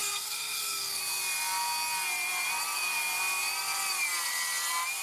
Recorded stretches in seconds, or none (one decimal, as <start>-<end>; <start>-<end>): 1.0-5.0

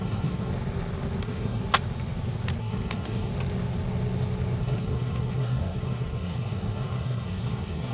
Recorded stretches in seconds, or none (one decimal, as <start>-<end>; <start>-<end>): 0.5-1.2; 1.6-2.6; 3.3-4.6

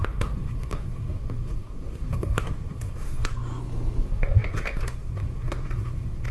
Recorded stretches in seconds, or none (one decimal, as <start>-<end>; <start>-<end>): 3.3-4.0

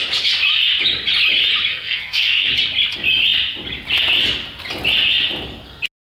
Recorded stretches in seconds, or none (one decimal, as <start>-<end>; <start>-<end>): 0.0-1.7; 2.5-6.1

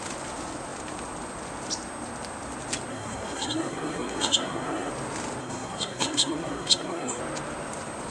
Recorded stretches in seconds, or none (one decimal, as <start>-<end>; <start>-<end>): 0.0-2.9; 4.9-5.4; 7.2-8.1

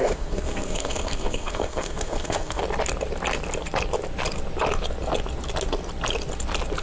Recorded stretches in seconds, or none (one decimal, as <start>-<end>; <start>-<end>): 2.6-6.8